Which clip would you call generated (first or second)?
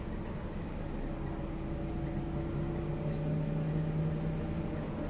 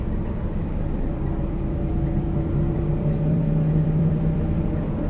second